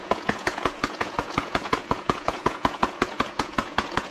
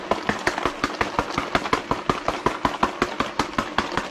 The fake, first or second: first